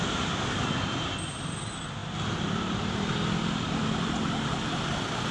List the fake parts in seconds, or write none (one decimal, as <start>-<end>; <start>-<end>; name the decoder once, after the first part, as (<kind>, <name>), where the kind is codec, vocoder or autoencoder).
none